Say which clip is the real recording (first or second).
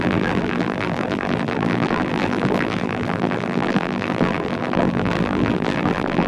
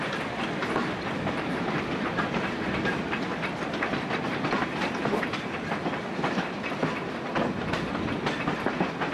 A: second